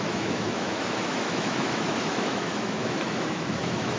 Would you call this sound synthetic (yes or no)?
yes